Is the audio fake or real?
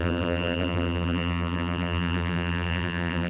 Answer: fake